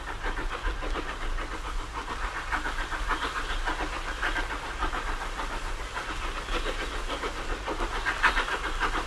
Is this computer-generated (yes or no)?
no